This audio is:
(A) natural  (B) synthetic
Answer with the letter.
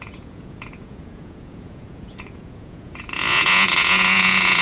B